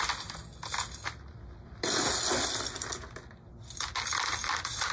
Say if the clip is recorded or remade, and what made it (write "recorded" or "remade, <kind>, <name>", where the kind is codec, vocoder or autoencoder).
recorded